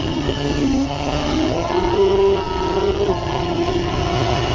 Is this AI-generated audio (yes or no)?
yes